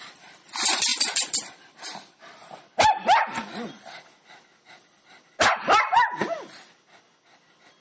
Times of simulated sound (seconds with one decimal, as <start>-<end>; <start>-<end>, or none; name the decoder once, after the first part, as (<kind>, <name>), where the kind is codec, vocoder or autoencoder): none